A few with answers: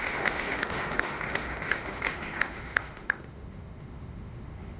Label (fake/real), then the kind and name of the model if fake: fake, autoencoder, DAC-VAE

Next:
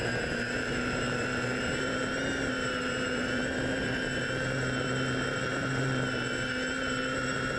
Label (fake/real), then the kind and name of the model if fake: fake, vocoder, BigVGAN v2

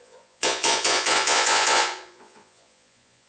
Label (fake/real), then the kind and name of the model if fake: fake, vocoder, Vocos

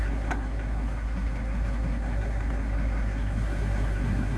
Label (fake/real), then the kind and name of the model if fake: fake, codec, SNAC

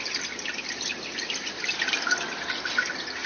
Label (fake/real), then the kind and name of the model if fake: real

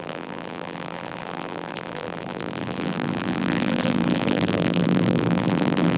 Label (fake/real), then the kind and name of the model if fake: fake, vocoder, BigVGAN v2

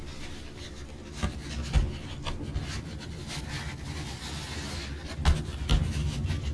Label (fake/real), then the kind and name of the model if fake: real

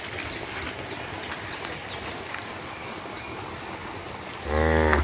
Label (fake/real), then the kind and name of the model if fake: real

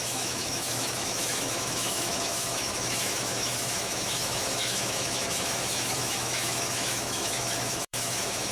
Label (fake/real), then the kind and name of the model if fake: fake, autoencoder, DAC-VAE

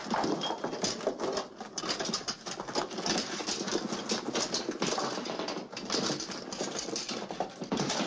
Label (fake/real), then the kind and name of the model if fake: real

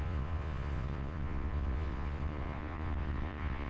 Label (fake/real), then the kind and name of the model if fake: fake, vocoder, Vocos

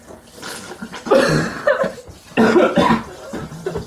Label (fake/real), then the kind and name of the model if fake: real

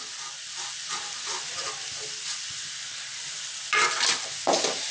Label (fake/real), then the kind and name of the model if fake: real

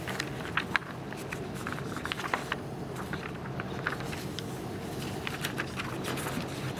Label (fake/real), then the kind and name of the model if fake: real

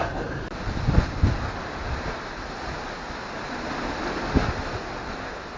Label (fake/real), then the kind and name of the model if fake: real